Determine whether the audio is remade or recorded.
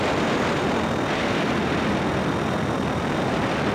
remade